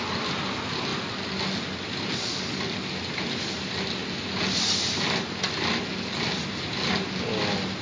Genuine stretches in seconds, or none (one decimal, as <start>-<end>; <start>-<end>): 0.0-7.8